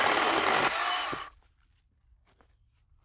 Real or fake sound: fake